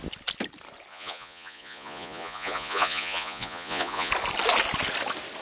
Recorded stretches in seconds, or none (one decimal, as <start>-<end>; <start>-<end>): 0.0-0.9; 4.1-5.4